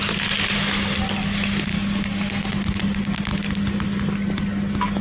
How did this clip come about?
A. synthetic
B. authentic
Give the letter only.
B